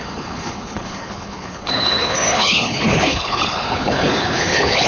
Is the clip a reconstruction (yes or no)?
yes